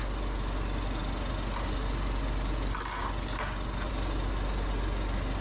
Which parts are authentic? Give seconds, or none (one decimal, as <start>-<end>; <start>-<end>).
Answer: 0.0-5.4